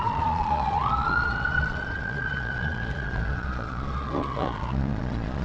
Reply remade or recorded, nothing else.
remade